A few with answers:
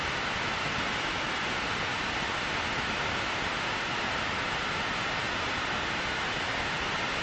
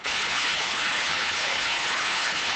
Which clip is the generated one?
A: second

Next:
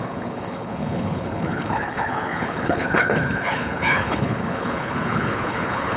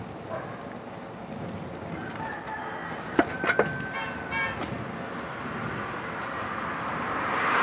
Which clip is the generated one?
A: first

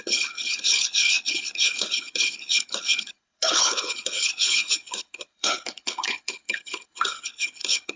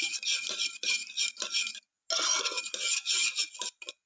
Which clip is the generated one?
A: first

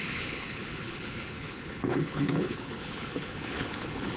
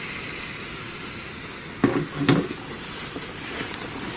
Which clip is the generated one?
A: first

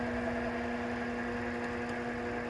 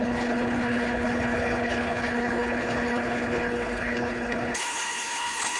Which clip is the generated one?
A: second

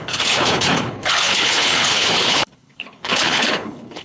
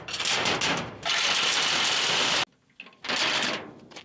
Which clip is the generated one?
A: first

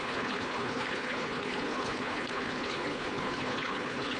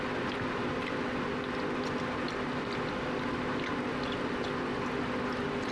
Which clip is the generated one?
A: first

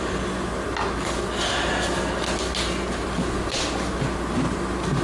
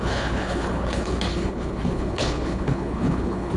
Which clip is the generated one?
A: second